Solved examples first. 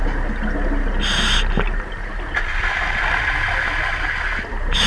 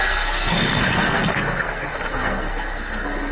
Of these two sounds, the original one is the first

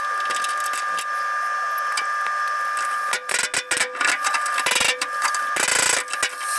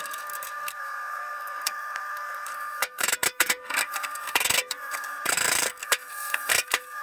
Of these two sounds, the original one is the first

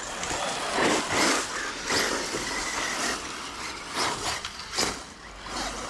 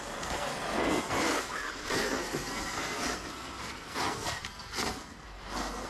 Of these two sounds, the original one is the first